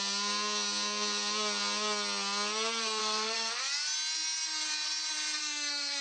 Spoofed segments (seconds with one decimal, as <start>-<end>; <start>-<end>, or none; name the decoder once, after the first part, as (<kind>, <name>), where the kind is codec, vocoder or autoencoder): 3.0-3.6 (codec, SNAC); 5.4-6.0